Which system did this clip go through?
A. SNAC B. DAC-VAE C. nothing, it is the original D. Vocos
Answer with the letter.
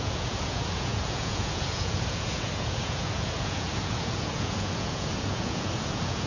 D